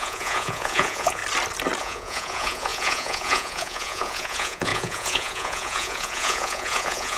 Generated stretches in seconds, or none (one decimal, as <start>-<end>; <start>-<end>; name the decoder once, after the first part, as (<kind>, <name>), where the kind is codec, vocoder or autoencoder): 0.0-1.2 (vocoder, Vocos); 1.8-7.2